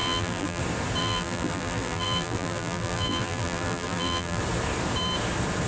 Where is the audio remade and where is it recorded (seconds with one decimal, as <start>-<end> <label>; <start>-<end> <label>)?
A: 0.0-0.6 remade; 0.6-1.0 recorded; 1.0-4.4 remade; 4.4-5.7 recorded